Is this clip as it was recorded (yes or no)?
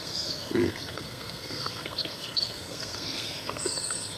no